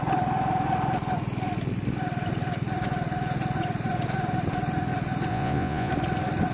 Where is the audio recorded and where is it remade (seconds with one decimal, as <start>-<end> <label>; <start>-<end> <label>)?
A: 0.0-5.3 recorded; 5.3-5.9 remade; 5.9-6.5 recorded